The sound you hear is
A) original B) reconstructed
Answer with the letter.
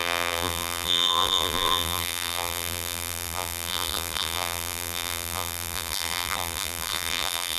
B